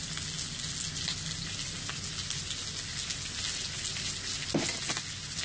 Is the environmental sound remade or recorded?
recorded